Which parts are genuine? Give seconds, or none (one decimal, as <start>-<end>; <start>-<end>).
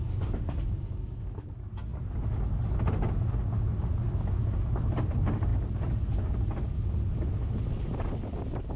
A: 0.0-8.8